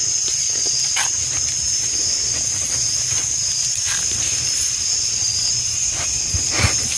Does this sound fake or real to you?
real